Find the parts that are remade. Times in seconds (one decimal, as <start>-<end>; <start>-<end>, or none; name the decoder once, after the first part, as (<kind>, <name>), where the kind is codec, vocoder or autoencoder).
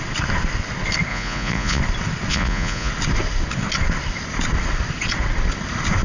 1.1-1.8 (vocoder, Vocos); 2.3-2.9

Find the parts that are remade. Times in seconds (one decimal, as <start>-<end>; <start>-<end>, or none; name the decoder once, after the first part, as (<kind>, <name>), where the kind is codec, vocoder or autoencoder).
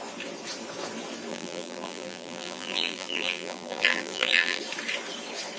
1.3-4.6 (vocoder, BigVGAN v2)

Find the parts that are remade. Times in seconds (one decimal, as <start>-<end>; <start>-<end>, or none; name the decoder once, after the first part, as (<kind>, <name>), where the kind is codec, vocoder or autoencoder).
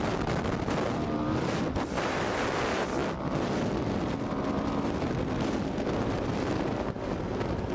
none